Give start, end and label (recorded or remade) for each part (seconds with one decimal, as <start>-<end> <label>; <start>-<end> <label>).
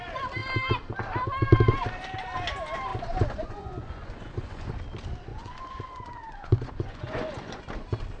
0.0-2.9 recorded; 2.9-4.7 remade; 4.7-5.3 recorded; 5.3-7.6 remade; 7.6-8.2 recorded